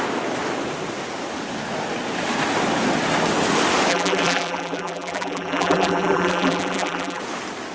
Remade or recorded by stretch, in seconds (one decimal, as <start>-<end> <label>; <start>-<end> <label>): 0.0-3.9 recorded; 3.9-7.2 remade; 7.2-7.7 recorded